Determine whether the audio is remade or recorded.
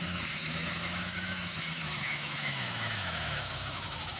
remade